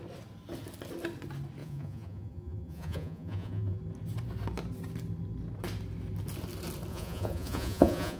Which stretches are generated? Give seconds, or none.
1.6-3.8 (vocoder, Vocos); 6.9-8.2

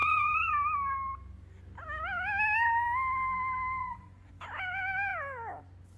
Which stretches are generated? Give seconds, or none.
0.0-0.5 (vocoder, Vocos); 3.8-4.3

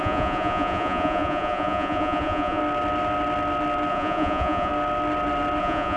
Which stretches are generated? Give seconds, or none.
0.0-2.6 (vocoder, Vocos); 3.9-4.7; 5.6-6.0